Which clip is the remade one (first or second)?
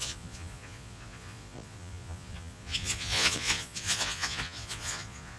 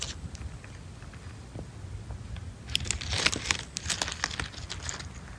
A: first